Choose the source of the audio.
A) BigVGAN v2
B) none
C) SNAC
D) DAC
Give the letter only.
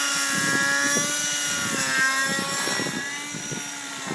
B